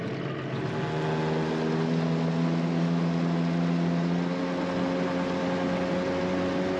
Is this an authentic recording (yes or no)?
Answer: yes